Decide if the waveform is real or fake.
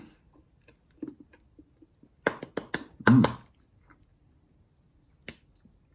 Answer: real